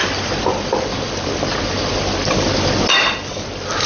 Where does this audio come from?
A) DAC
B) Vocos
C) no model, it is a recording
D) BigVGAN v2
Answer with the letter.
C